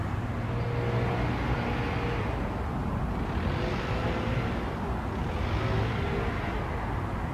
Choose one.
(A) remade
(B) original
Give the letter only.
B